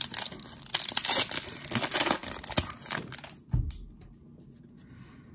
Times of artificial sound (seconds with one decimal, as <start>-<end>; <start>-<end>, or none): none